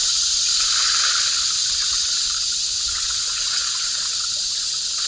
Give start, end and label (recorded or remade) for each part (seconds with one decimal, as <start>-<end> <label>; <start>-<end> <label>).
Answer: 0.0-0.7 remade; 0.7-1.6 recorded; 1.6-5.1 remade

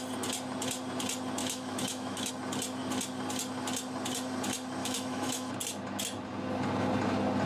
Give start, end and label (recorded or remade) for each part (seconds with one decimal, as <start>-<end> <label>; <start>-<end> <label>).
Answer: 0.0-1.4 recorded; 1.4-2.3 remade; 2.3-4.8 recorded; 4.8-5.5 remade; 5.5-7.5 recorded

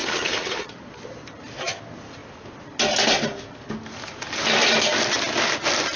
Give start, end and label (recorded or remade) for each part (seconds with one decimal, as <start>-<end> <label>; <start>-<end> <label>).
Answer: 0.0-0.9 remade; 0.9-6.0 recorded

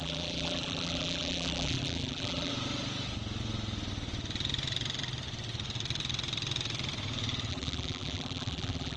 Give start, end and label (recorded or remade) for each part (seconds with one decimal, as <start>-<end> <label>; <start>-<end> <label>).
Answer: 0.0-2.5 remade; 2.5-7.5 recorded; 7.5-9.0 remade

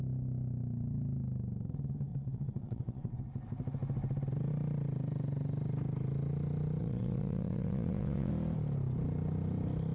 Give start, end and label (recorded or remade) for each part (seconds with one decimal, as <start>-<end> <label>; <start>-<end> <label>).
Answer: 0.0-2.1 recorded; 2.1-3.2 remade; 3.2-6.8 recorded; 6.8-8.3 remade; 8.3-9.9 recorded

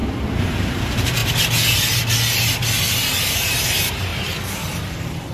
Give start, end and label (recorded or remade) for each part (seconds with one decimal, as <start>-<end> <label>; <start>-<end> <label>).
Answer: 0.0-0.6 recorded; 0.6-1.2 remade; 1.2-3.2 recorded; 3.2-4.1 remade; 4.1-4.8 recorded; 4.8-5.3 remade